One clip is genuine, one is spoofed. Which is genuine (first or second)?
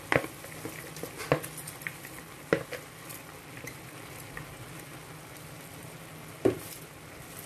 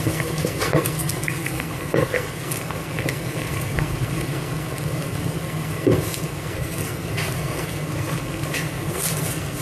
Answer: first